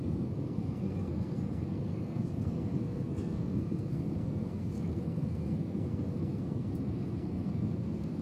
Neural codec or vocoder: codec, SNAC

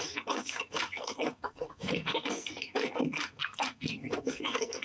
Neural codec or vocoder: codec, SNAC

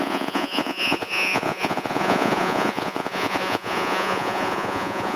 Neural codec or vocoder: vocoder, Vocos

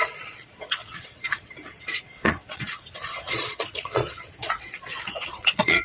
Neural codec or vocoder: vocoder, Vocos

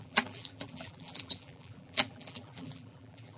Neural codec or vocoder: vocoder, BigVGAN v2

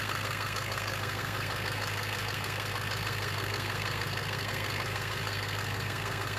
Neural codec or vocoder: codec, SNAC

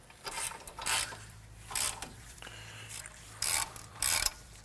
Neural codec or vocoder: vocoder, BigVGAN v2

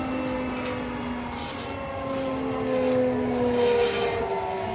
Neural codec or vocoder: none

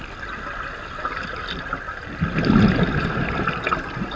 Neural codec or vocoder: none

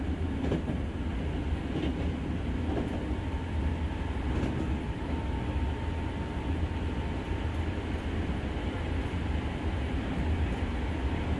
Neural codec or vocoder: none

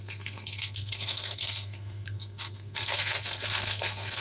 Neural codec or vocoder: codec, SNAC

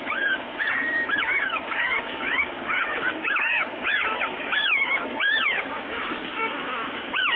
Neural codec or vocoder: codec, DAC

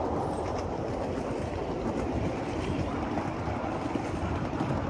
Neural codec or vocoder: none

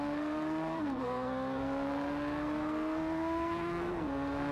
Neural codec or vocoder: codec, SNAC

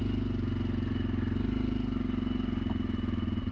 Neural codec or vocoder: none